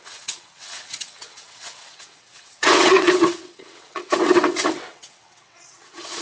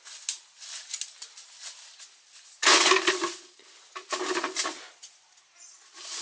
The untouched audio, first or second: second